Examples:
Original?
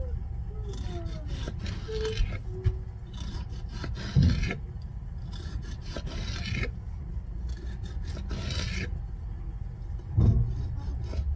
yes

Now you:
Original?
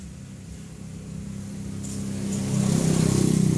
yes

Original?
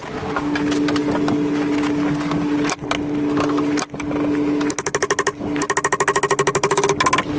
yes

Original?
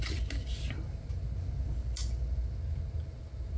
yes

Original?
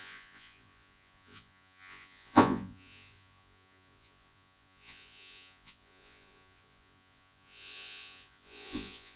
no